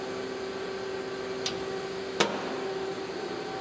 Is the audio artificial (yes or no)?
no